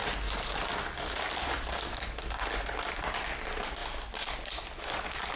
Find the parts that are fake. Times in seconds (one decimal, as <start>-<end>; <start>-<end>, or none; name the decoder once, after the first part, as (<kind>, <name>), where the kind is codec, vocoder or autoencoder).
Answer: none